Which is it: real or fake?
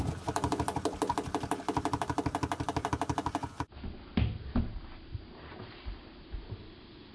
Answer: real